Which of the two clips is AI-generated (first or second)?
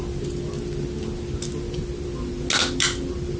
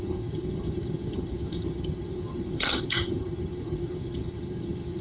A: second